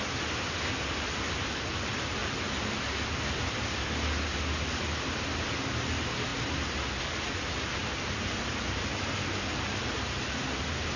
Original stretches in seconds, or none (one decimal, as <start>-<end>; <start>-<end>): 0.0-11.0